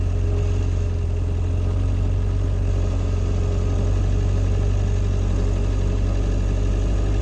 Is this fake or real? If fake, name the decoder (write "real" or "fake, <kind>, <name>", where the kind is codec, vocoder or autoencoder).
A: real